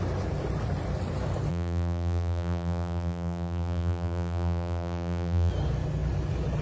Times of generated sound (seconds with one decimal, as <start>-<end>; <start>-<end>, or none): 1.5-5.5